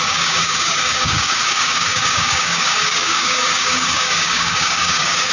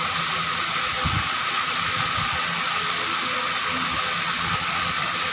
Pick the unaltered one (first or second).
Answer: second